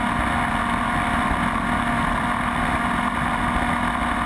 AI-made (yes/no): no